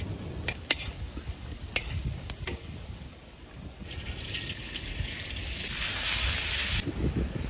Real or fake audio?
real